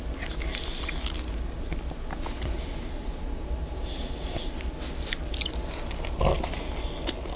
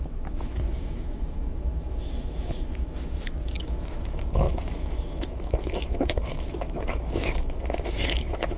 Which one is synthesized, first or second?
second